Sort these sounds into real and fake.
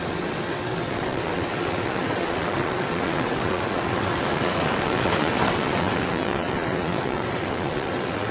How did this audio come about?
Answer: fake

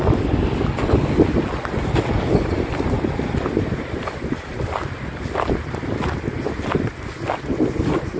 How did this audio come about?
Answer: real